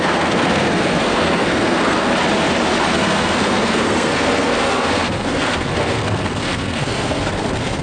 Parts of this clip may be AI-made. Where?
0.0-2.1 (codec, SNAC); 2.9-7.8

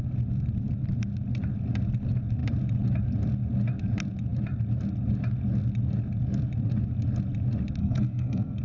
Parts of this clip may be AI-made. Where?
7.8-8.6 (codec, SNAC)

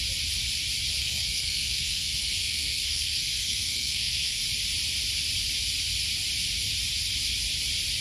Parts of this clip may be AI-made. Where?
1.0-4.4 (codec, SNAC)

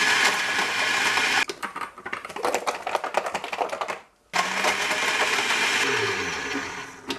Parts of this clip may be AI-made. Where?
none

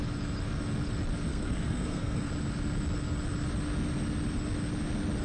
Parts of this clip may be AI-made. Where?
1.3-2.3 (codec, SNAC)

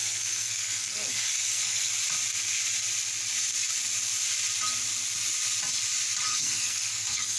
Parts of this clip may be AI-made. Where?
0.0-1.9 (codec, SNAC); 6.3-7.4